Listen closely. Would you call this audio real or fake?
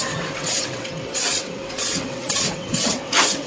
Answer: fake